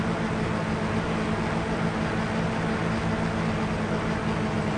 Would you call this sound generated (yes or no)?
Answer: no